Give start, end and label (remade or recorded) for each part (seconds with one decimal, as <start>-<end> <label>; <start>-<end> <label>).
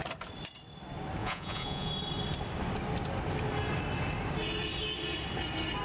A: 0.0-1.2 recorded; 1.2-1.9 remade; 1.9-5.8 recorded